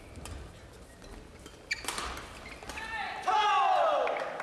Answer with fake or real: real